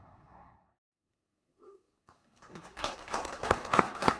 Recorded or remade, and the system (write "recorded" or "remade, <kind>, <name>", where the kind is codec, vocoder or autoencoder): remade, codec, SNAC